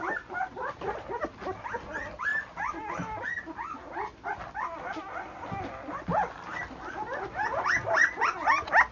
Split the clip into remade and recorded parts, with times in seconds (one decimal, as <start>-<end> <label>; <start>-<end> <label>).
0.0-8.9 recorded